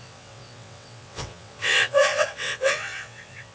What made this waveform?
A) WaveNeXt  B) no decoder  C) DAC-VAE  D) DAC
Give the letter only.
A